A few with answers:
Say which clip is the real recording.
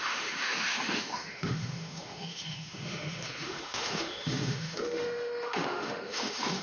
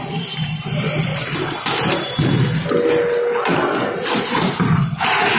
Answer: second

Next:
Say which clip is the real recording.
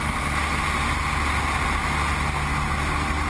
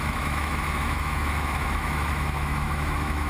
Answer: first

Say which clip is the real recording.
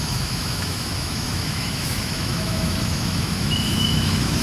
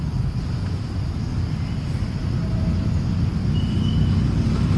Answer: second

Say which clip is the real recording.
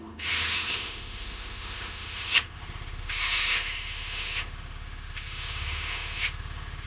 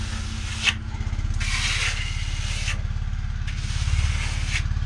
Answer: second